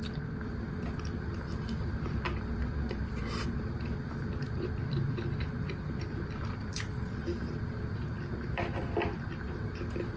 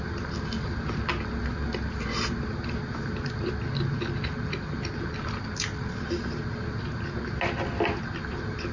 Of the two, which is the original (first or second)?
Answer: second